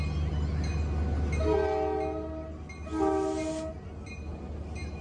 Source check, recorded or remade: recorded